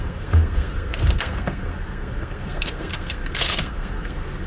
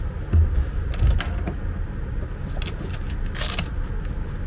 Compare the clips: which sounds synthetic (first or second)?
first